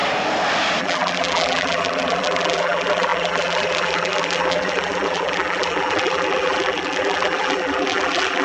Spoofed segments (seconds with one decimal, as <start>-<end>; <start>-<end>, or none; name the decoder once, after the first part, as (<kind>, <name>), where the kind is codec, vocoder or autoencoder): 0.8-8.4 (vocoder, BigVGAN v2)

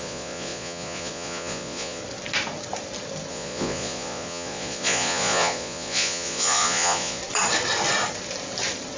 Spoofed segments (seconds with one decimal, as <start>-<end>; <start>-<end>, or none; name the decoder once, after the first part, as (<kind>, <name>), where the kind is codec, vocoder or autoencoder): 0.0-2.0 (vocoder, Vocos); 3.3-7.2

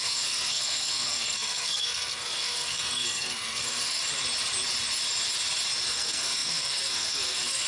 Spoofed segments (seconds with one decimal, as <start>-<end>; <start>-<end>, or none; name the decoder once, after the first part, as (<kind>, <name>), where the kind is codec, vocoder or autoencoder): 0.0-4.0 (codec, SNAC); 5.9-7.7

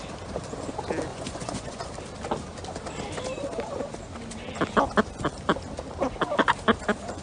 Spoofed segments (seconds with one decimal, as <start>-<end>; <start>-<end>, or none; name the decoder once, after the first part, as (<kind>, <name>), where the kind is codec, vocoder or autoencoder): 1.1-1.9 (vocoder, Vocos)

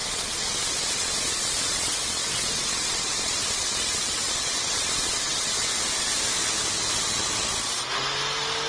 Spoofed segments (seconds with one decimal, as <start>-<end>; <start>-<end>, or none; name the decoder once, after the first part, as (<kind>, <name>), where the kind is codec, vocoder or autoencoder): 0.0-5.7 (vocoder, WaveNeXt)

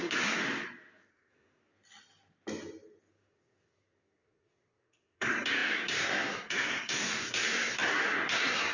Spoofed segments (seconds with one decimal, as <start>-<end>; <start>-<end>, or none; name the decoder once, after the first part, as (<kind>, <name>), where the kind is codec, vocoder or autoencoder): 0.0-0.4 (codec, SNAC); 1.1-1.7; 3.1-8.7

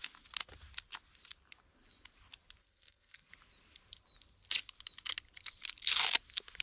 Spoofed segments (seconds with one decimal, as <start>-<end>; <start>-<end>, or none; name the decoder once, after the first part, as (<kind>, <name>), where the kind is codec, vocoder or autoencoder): 2.6-3.3 (codec, SNAC)